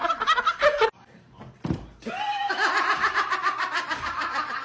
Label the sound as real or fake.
real